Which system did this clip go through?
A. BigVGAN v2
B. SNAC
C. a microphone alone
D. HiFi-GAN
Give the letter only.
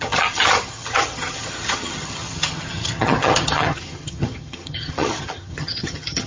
D